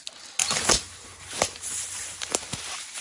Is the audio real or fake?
real